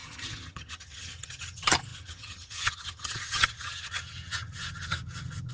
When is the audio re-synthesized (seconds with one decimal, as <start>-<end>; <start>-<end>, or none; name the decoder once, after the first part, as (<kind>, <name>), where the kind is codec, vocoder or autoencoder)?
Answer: 0.0-5.5 (vocoder, HiFi-GAN)